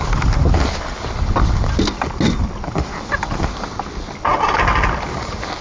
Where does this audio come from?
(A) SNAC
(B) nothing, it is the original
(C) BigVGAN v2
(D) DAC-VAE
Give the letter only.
B